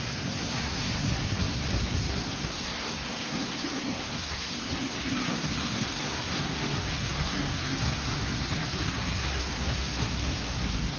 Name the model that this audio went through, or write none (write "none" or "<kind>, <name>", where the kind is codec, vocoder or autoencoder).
codec, SNAC